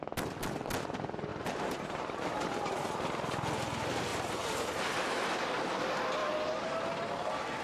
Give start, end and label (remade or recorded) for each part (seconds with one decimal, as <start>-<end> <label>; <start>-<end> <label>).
0.0-1.3 recorded; 1.3-2.2 remade; 2.2-4.1 recorded; 4.1-4.7 remade; 4.7-7.6 recorded